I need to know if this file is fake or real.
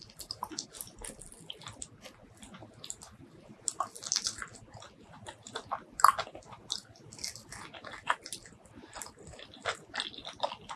real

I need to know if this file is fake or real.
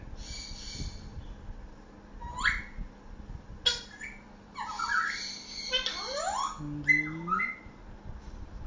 real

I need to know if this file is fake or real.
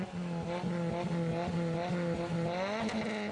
real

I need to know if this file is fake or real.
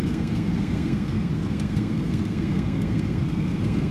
fake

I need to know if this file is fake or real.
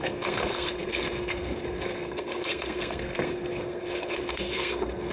fake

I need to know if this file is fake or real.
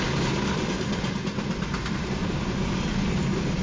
real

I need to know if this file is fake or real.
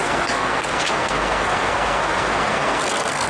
fake